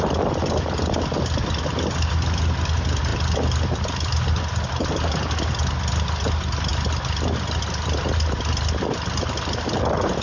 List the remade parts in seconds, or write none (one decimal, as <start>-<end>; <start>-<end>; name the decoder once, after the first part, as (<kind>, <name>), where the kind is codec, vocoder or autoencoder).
none